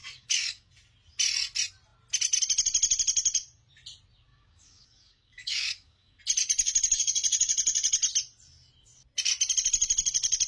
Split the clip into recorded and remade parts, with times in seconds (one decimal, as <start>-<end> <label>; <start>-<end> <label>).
0.0-0.7 remade; 0.7-4.3 recorded; 4.3-6.2 remade; 6.2-10.5 recorded